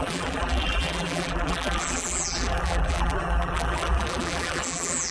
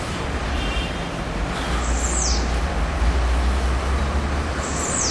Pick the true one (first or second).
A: second